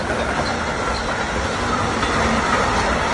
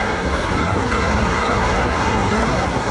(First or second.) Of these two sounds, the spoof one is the second